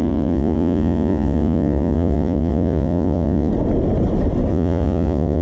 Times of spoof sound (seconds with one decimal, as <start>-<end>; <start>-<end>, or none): 0.0-3.5; 4.5-5.4